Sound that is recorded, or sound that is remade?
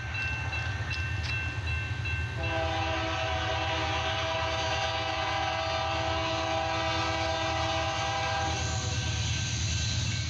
recorded